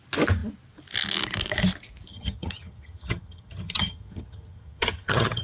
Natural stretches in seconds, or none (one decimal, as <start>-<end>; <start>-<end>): 0.0-2.1